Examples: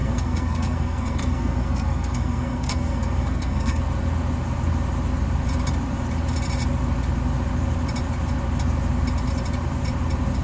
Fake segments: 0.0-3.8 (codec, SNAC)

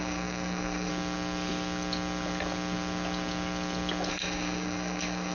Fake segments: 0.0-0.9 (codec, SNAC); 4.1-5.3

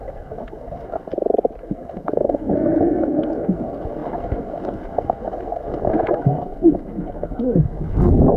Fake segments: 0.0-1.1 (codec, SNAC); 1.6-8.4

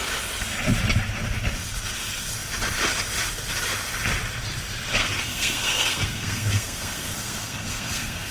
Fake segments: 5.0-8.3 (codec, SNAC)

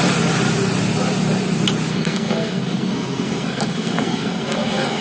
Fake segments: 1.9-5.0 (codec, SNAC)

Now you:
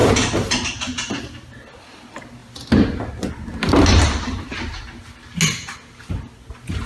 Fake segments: none